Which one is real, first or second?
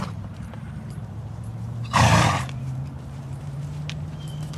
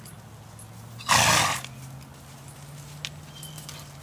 second